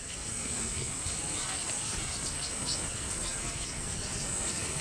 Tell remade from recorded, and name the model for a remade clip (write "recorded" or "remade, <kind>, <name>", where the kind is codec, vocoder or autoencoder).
remade, codec, SNAC